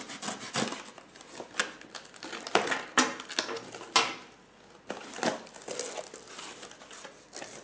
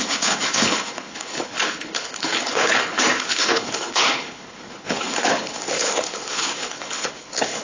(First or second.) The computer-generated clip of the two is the second